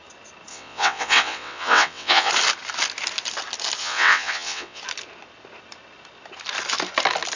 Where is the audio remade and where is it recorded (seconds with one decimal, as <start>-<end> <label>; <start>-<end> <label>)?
0.0-0.5 recorded; 0.5-2.3 remade; 2.3-3.8 recorded; 3.8-4.8 remade; 4.8-7.4 recorded